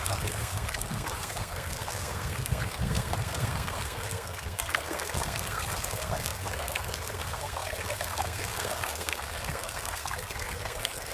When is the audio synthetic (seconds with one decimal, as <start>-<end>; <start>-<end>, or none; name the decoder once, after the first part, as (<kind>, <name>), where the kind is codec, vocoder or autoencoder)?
0.0-11.1 (codec, SNAC)